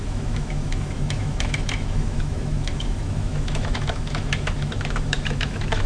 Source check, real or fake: fake